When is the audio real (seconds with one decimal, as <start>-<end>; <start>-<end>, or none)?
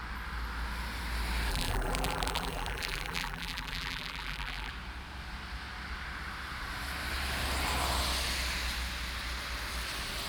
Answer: 0.0-1.5; 4.7-10.3